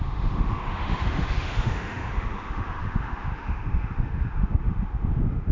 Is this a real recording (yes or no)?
no